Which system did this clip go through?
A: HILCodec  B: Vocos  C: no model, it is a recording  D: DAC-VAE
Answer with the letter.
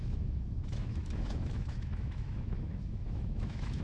D